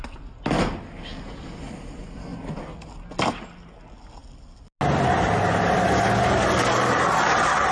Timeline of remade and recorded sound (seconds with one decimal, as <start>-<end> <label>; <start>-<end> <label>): 0.0-7.7 recorded